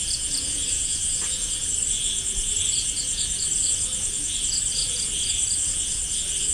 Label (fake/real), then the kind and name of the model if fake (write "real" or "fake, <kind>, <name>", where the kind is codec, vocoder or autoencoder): fake, vocoder, Vocos